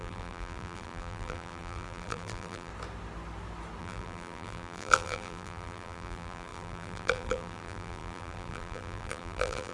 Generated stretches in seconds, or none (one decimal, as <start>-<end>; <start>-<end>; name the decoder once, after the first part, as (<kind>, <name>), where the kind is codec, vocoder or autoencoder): 0.0-2.7 (vocoder, BigVGAN v2); 3.8-9.7